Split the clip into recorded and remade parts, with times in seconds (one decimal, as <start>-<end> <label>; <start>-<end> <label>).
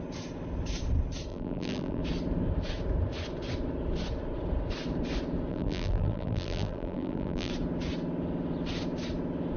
0.0-1.3 recorded; 1.3-2.0 remade; 2.0-5.5 recorded; 5.5-7.5 remade; 7.5-9.6 recorded